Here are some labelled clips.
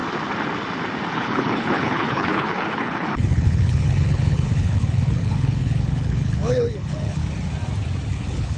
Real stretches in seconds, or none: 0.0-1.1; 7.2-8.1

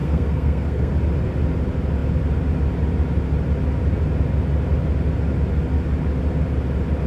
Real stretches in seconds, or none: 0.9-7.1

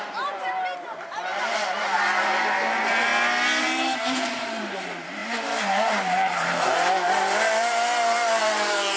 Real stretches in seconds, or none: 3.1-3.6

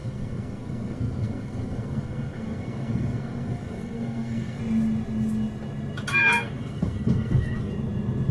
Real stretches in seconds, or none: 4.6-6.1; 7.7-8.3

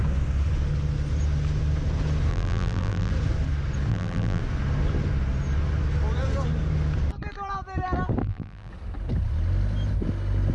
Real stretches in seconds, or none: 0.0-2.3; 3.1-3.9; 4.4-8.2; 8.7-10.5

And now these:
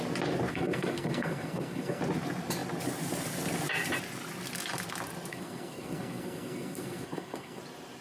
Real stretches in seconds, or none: 0.0-0.5; 2.0-5.3; 7.6-8.0

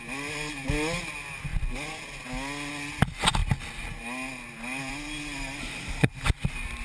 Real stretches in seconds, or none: 0.0-5.6; 6.1-6.8

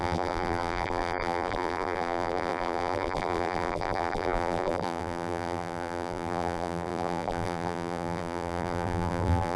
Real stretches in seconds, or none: none